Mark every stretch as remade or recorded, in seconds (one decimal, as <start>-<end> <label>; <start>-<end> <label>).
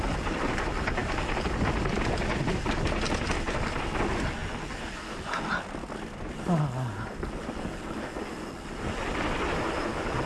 0.0-10.3 recorded